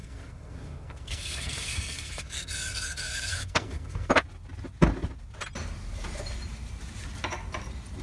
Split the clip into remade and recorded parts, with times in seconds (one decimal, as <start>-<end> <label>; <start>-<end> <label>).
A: 0.0-4.1 remade; 4.1-8.0 recorded